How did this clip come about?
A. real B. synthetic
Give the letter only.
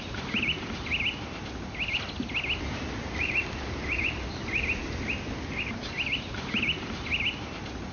A